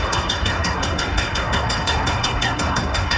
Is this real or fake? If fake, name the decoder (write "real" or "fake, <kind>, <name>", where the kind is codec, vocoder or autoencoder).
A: fake, codec, SNAC